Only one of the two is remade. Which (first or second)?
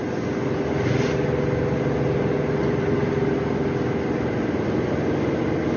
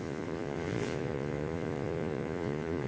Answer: second